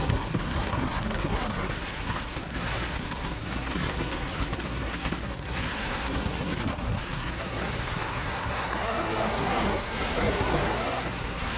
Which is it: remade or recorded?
remade